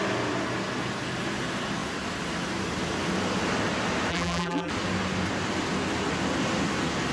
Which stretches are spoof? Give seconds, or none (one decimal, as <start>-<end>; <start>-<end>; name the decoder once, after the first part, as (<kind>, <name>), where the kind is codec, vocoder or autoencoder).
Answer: 4.1-4.7 (vocoder, BigVGAN v2)